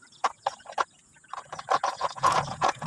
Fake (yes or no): yes